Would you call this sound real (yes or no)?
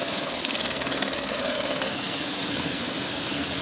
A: no